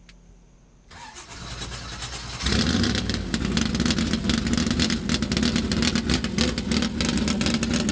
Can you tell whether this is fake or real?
real